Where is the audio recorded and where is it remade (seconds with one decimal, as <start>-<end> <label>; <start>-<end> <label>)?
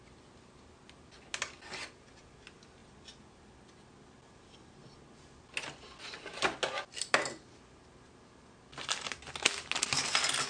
0.0-10.5 recorded